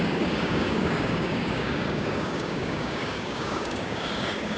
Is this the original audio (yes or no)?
no